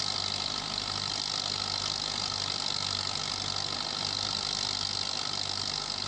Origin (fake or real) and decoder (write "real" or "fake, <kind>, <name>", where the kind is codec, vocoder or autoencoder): real